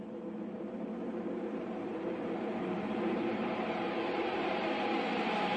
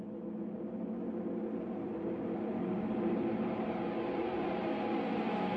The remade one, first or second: first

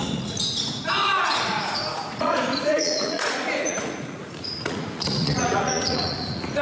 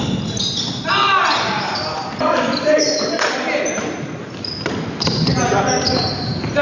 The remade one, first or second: first